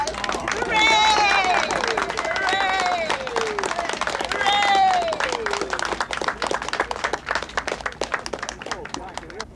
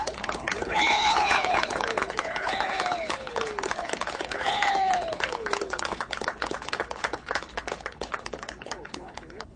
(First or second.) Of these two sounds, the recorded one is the first